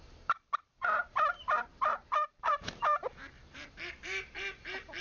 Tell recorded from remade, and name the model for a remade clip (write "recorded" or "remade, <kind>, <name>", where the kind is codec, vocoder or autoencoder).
remade, vocoder, BigVGAN v2